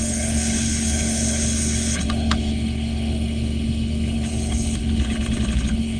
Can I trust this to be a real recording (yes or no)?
no